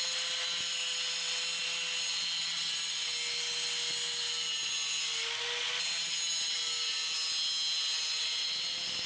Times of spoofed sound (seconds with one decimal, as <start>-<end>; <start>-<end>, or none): none